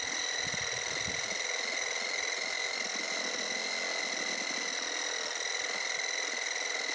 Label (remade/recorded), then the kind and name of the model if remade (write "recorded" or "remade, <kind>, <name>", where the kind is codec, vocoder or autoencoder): recorded